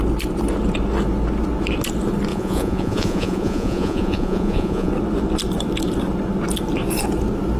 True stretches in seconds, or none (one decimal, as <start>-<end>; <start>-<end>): 0.0-2.3; 4.9-7.6